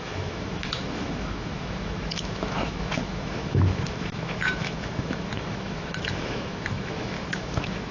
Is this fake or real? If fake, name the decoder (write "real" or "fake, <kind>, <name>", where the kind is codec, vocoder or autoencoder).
fake, autoencoder, DAC-VAE